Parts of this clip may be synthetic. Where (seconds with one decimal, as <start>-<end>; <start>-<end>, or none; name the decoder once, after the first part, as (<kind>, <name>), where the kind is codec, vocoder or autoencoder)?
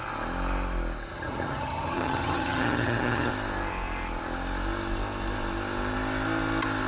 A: 1.1-3.3 (vocoder, HiFi-GAN)